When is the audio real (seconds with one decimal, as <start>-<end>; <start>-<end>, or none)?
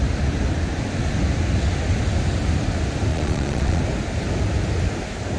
0.0-3.1; 3.8-5.4